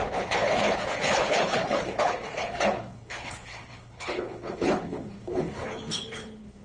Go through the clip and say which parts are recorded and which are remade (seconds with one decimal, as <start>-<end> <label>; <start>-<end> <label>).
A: 0.0-6.6 remade